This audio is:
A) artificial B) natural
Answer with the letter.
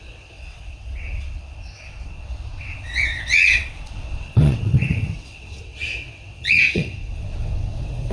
A